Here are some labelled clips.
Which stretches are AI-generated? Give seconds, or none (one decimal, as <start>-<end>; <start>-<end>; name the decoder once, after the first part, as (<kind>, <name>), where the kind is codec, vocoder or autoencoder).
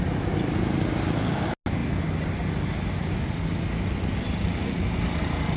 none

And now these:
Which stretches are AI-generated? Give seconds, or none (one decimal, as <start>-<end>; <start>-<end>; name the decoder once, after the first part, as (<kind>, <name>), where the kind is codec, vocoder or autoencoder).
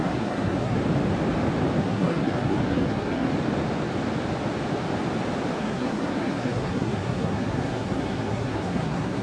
0.0-0.8 (codec, SNAC); 1.8-3.3; 5.6-9.2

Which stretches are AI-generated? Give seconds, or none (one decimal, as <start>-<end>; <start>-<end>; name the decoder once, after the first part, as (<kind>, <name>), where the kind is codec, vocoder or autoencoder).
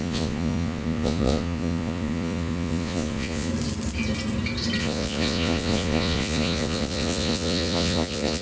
0.0-3.5 (vocoder, Vocos); 4.8-8.4